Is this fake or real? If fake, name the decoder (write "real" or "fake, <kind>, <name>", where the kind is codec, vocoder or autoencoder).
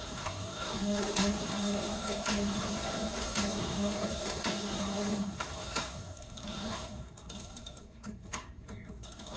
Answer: fake, codec, SNAC